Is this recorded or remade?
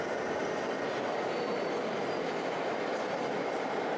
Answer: recorded